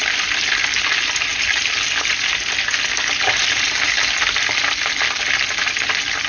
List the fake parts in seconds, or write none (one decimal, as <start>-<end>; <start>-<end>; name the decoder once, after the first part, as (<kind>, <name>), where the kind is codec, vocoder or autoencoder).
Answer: none